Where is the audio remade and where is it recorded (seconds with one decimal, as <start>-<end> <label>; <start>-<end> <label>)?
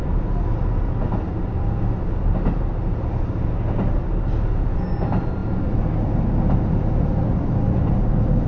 0.0-8.5 recorded